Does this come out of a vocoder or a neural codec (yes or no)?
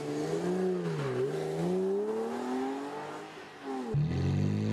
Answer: no